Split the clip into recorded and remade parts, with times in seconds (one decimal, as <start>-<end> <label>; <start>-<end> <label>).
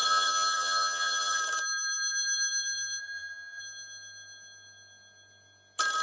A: 0.0-1.4 remade; 1.4-3.0 recorded; 3.0-3.6 remade; 3.6-6.0 recorded